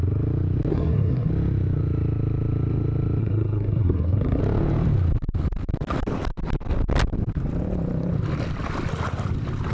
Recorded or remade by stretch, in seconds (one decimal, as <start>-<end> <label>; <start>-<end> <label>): 0.0-0.7 recorded; 0.7-1.3 remade; 1.3-3.2 recorded; 3.2-4.4 remade; 4.4-9.7 recorded